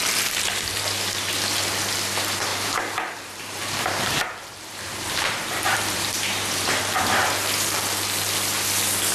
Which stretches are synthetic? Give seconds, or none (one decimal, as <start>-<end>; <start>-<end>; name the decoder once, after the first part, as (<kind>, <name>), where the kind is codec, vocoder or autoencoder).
2.5-6.7 (vocoder, BigVGAN v2)